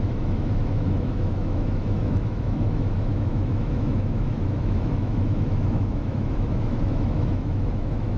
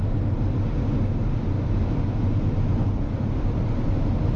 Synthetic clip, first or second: first